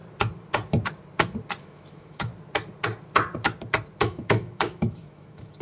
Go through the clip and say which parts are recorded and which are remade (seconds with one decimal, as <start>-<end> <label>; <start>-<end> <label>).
0.0-1.6 recorded; 1.6-2.3 remade; 2.3-4.0 recorded; 4.0-5.6 remade